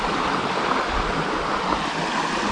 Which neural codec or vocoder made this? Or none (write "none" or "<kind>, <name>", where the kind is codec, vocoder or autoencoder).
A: none